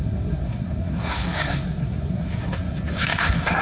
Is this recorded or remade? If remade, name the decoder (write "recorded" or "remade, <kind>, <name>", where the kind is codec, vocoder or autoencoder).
remade, codec, SNAC